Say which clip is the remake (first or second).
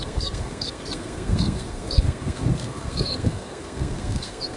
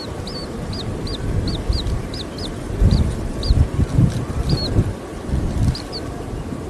first